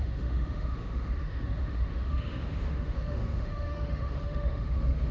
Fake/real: fake